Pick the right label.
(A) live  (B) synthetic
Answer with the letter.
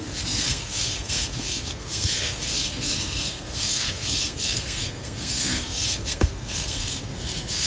B